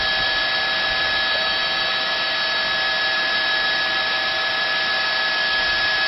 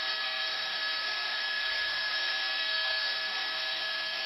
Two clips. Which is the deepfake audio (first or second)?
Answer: second